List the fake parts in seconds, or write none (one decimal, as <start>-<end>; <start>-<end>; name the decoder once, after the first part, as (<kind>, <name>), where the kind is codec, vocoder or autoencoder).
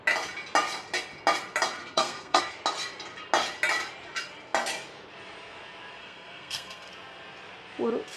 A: 1.8-2.4 (codec, SNAC); 6.0-6.9